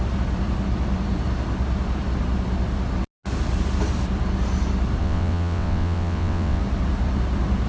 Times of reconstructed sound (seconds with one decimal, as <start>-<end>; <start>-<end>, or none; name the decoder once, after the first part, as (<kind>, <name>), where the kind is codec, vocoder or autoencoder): 5.0-6.6 (vocoder, WaveNeXt)